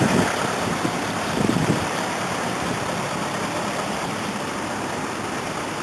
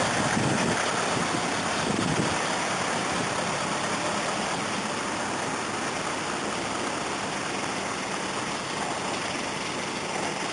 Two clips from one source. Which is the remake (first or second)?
first